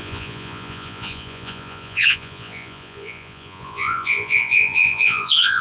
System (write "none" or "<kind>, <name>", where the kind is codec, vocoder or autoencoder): vocoder, Vocos